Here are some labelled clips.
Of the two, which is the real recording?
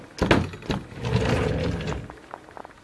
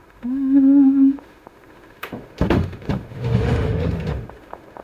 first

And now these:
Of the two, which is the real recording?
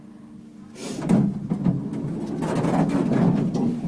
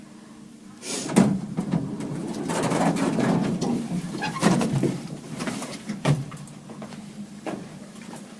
first